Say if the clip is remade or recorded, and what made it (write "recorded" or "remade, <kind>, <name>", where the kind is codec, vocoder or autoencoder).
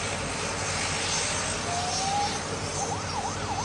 recorded